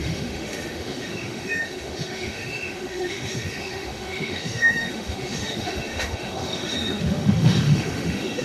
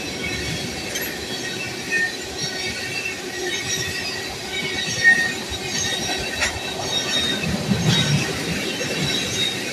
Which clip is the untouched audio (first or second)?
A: second